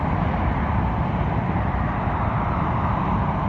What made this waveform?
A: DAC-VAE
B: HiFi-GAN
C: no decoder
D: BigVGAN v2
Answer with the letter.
D